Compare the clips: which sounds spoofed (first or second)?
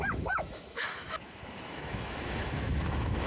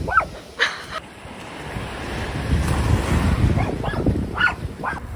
first